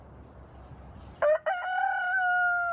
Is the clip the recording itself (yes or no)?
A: yes